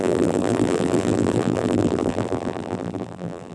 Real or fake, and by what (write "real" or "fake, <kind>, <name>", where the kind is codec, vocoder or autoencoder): fake, vocoder, BigVGAN v2